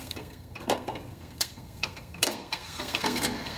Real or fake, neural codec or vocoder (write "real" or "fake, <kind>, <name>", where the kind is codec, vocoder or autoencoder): fake, codec, SNAC